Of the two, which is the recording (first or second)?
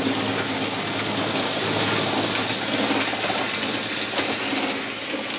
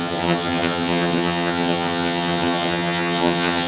first